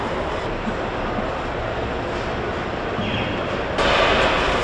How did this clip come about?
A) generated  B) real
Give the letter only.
B